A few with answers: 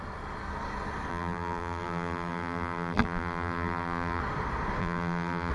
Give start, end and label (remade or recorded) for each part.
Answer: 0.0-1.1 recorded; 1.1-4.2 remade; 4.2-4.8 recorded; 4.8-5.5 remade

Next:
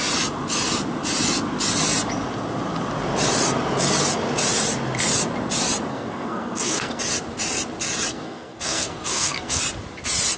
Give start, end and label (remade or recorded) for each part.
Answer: 0.0-5.9 recorded; 5.9-7.0 remade; 7.0-8.1 recorded; 8.1-9.6 remade; 9.6-10.4 recorded

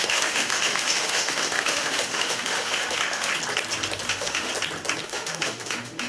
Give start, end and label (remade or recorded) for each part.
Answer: 0.0-3.3 remade; 3.3-4.1 recorded; 4.1-4.5 remade; 4.5-5.0 recorded; 5.0-6.1 remade

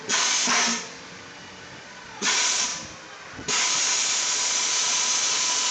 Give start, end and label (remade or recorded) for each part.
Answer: 0.0-0.4 remade; 0.4-1.8 recorded; 1.8-2.7 remade; 2.7-4.2 recorded; 4.2-5.7 remade

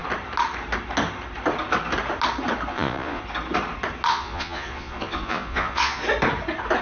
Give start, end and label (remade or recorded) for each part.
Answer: 0.0-2.7 recorded; 2.7-3.2 remade; 3.2-4.1 recorded; 4.1-6.0 remade; 6.0-6.8 recorded

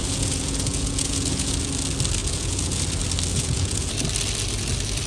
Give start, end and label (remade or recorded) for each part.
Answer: 0.0-1.7 remade; 1.7-2.2 recorded; 2.2-2.8 remade; 2.8-3.3 recorded; 3.3-3.9 remade; 3.9-5.1 recorded

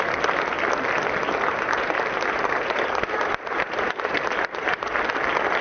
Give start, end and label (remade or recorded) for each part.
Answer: 0.0-1.5 recorded; 1.5-4.9 remade; 4.9-5.6 recorded